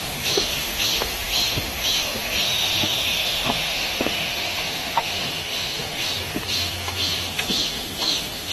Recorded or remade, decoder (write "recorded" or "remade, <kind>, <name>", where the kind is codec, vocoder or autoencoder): remade, autoencoder, DAC-VAE